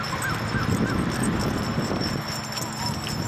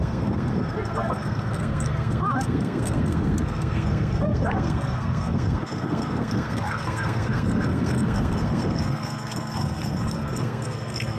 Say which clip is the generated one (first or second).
second